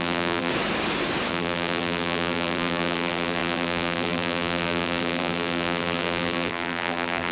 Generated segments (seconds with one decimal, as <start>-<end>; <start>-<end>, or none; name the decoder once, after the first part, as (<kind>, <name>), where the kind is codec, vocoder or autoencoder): 0.0-0.5 (vocoder, BigVGAN v2); 1.3-7.3